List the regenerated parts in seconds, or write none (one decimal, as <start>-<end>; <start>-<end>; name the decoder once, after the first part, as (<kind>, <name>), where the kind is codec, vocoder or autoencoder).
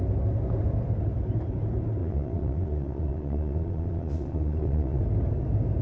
2.0-5.0 (vocoder, Vocos)